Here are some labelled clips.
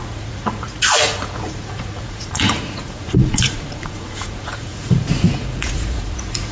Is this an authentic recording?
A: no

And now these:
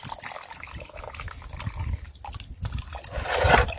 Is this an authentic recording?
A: yes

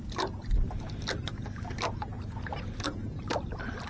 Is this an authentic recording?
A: yes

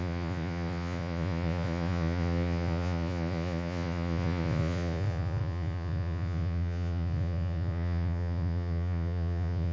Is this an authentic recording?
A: no